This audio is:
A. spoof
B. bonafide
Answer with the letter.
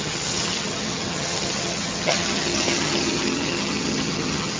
A